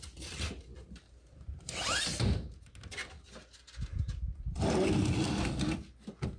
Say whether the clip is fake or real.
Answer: real